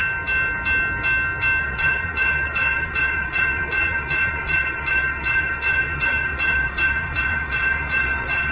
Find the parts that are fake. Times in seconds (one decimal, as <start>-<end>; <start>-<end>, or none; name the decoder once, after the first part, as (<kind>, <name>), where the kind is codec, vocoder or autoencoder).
1.6-8.5 (vocoder, Vocos)